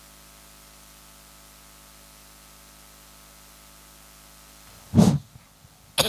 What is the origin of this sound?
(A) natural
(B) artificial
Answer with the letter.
A